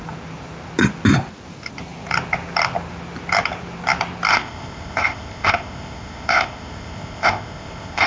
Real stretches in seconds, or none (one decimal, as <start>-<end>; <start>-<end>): 0.0-4.3